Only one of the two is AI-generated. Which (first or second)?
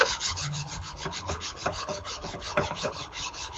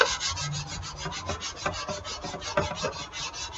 first